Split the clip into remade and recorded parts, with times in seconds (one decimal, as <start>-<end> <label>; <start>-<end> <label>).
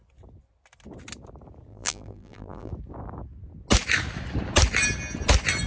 0.0-1.7 recorded; 1.7-2.7 remade; 2.7-5.7 recorded